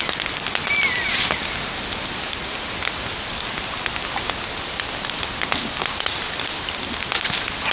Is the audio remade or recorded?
recorded